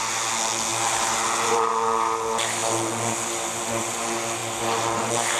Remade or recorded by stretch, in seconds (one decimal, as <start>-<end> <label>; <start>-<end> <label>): 0.0-5.4 recorded